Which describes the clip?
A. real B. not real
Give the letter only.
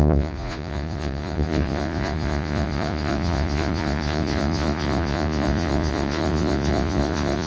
B